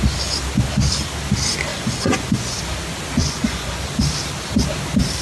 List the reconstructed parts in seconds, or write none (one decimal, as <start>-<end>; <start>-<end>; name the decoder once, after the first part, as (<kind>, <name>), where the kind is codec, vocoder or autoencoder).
1.7-2.6 (vocoder, Vocos); 3.2-3.8